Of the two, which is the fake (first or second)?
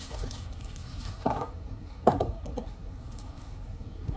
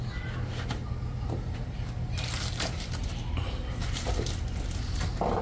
first